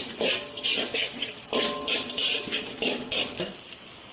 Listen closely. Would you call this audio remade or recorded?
recorded